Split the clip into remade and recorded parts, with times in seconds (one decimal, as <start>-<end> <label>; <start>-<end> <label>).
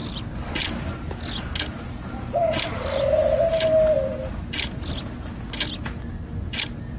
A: 0.0-7.0 recorded